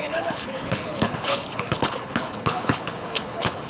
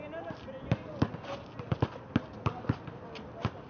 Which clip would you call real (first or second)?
second